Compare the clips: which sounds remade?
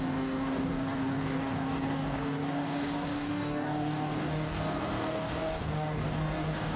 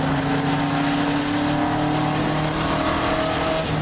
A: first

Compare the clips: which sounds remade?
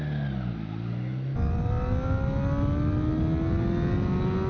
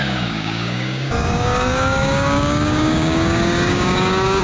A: second